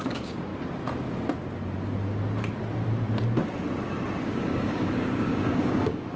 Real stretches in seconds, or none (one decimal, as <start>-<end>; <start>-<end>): 0.5-4.2